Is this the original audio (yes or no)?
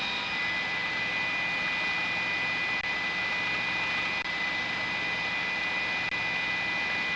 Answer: yes